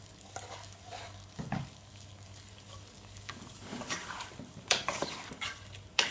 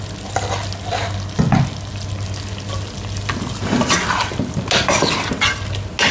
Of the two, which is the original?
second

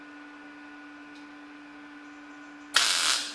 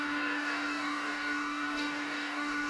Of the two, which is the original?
first